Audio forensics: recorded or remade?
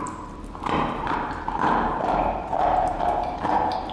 remade